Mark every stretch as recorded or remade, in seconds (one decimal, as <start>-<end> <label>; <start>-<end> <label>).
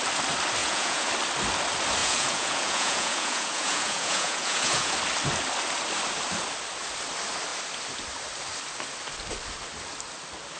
0.0-0.6 recorded; 0.6-1.1 remade; 1.1-2.0 recorded; 2.0-4.9 remade; 4.9-10.6 recorded